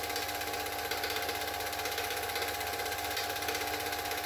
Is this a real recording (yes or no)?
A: yes